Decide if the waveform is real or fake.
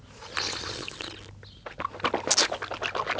real